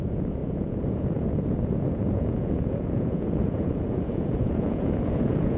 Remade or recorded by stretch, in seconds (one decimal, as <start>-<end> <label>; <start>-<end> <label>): 0.0-5.6 remade